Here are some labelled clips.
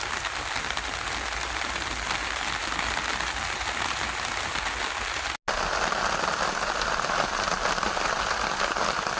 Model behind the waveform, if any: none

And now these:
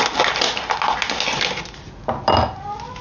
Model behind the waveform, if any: none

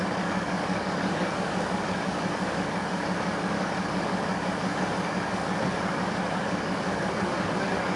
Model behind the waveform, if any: codec, DAC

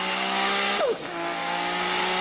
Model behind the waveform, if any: codec, DAC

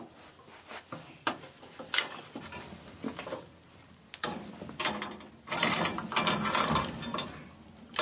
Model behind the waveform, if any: none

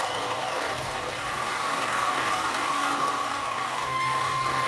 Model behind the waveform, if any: codec, DAC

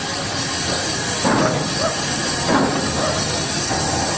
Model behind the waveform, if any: none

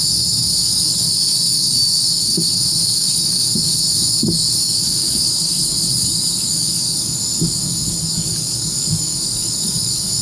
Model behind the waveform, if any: codec, DAC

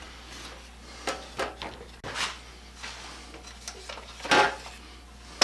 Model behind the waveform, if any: none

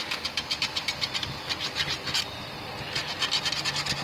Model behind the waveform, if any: none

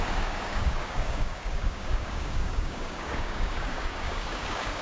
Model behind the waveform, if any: codec, DAC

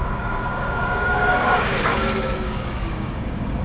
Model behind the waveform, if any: codec, DAC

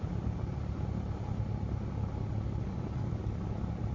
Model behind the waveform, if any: none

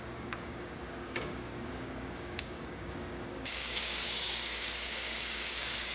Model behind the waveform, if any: codec, DAC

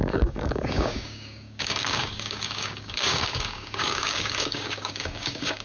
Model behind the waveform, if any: codec, DAC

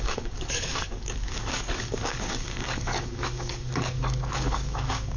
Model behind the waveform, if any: codec, DAC